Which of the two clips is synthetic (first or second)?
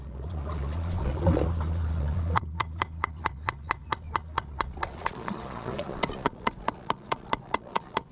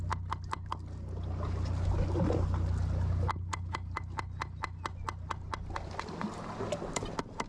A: first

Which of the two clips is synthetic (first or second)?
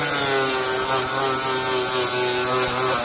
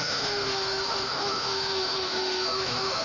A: second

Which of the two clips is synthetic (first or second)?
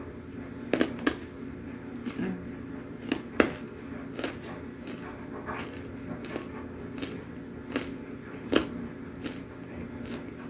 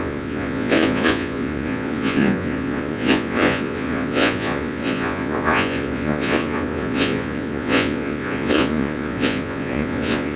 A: second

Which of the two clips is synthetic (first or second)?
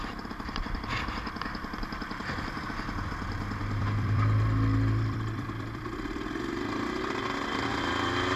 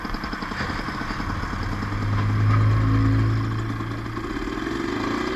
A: first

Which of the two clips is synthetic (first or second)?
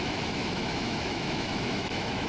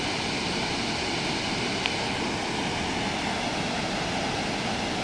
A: first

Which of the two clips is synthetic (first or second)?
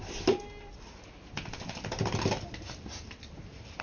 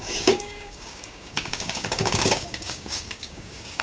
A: second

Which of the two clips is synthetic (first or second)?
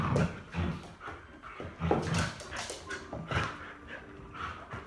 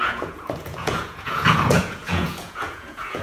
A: second